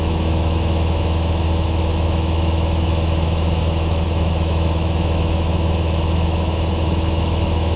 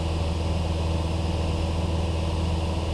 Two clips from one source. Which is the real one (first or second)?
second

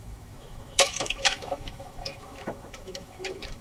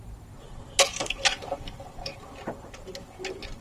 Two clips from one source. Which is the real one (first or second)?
second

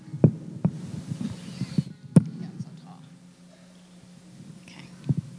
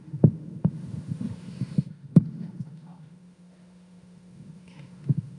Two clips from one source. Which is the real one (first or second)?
first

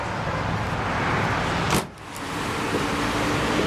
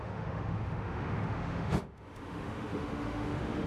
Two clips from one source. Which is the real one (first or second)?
first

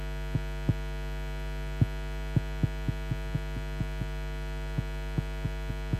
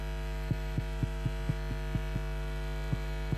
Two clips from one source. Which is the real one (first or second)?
first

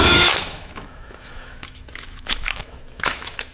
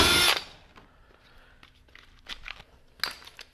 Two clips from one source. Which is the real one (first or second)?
second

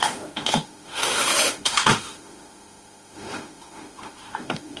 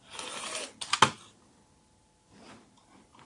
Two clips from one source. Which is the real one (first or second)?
second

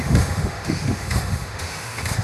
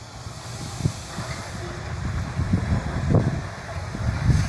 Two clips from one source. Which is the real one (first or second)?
second